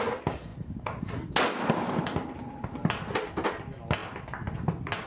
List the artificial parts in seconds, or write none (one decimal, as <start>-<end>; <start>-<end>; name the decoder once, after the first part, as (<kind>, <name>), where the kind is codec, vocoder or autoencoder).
none